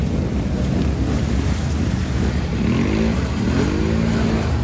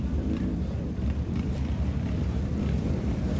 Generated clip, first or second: second